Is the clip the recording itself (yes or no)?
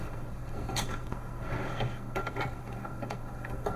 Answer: no